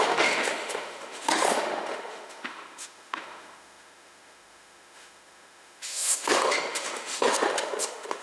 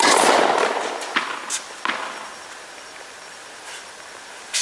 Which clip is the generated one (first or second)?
first